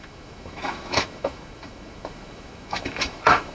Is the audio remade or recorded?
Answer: remade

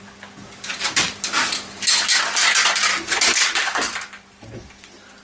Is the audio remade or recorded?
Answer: recorded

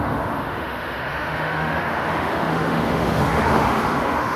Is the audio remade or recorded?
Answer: remade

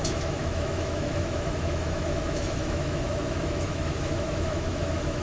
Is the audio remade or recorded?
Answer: remade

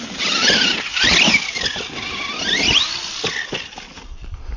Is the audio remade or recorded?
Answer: recorded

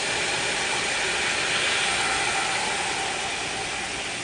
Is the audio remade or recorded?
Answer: recorded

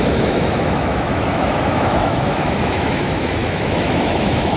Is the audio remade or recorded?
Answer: remade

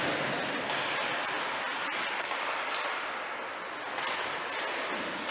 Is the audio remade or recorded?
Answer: recorded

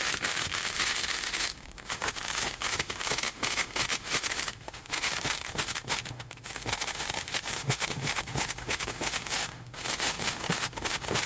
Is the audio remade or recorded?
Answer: remade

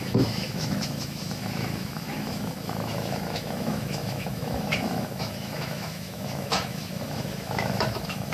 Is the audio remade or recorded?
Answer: remade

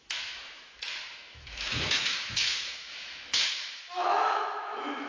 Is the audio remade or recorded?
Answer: remade